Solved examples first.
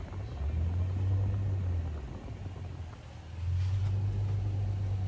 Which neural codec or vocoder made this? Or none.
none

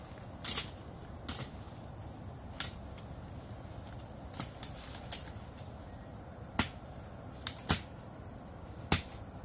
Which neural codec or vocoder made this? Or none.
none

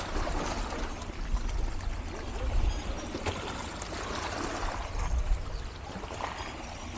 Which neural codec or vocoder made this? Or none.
none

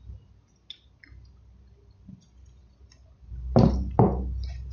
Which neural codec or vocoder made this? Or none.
none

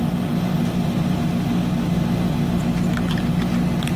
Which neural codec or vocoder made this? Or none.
none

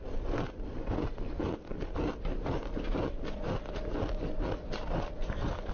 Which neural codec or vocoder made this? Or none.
none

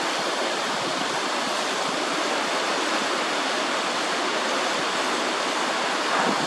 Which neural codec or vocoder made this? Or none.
none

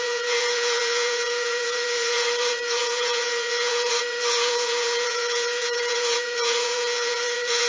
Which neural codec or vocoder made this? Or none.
vocoder, Vocos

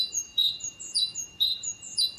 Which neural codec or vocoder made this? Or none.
vocoder, BigVGAN v2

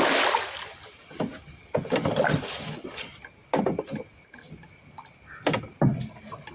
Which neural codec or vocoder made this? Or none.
none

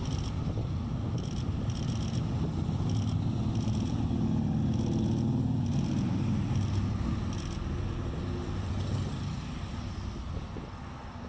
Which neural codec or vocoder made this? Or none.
none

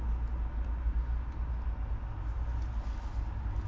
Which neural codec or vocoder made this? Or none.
none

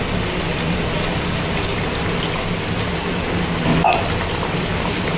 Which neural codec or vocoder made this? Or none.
none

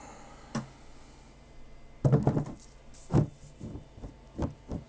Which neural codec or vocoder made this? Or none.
none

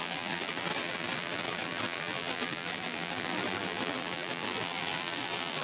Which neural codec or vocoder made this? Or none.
vocoder, BigVGAN v2